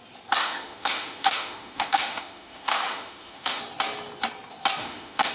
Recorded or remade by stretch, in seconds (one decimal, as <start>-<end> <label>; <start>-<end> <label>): 0.0-0.4 recorded; 0.4-3.6 remade; 3.6-4.8 recorded; 4.8-5.3 remade